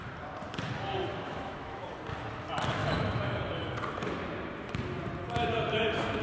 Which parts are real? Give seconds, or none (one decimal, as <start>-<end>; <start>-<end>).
0.0-1.1; 1.9-2.8; 3.7-6.2